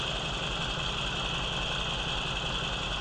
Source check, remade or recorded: recorded